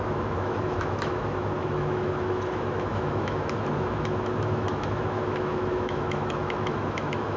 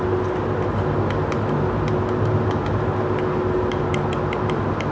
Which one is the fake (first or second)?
first